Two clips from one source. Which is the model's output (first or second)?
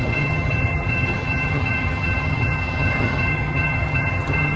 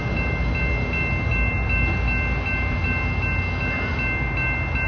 first